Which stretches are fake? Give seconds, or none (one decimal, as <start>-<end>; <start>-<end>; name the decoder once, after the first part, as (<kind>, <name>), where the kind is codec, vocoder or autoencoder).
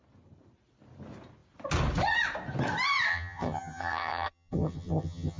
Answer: 3.1-5.4 (vocoder, HiFi-GAN)